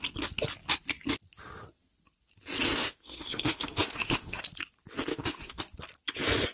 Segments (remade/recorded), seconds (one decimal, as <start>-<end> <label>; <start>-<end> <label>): 0.0-2.8 recorded; 2.8-4.4 remade; 4.4-5.1 recorded; 5.1-5.6 remade; 5.6-6.5 recorded